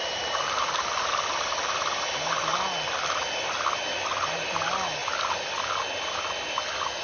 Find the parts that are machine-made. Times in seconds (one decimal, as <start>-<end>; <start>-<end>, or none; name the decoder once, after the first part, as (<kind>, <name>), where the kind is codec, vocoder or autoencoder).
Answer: 0.0-1.1 (vocoder, BigVGAN v2)